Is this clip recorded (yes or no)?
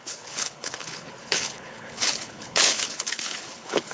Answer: no